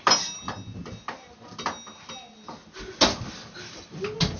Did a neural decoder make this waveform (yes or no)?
no